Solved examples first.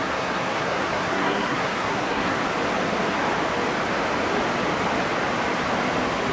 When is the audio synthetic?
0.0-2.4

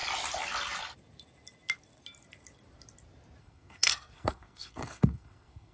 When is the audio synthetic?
3.4-5.7

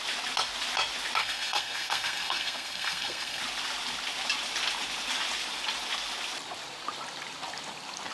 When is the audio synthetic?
1.2-3.4

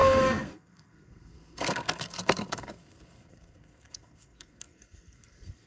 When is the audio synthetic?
0.0-5.7

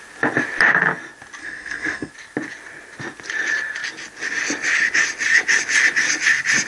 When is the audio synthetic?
1.4-2.1

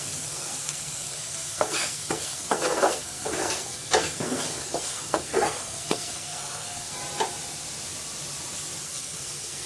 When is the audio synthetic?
0.0-7.0; 8.8-9.7

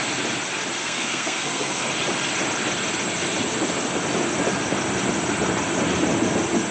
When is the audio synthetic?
0.8-1.9